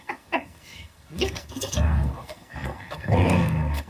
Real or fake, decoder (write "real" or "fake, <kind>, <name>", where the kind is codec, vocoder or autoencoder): fake, codec, SNAC